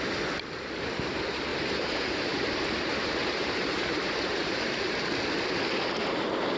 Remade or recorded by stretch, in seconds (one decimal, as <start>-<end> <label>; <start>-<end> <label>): 0.0-1.5 recorded; 1.5-4.8 remade; 4.8-6.6 recorded